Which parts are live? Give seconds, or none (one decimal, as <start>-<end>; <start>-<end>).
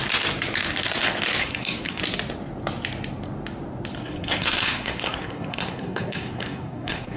0.0-1.4; 2.0-4.0